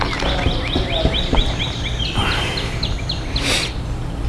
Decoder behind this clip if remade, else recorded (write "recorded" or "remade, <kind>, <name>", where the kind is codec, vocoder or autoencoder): recorded